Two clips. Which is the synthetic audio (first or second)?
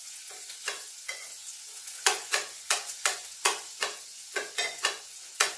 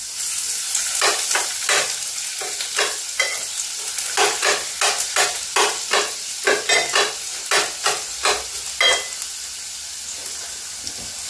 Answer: first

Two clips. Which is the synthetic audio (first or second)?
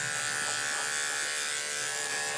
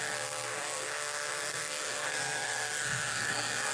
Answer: second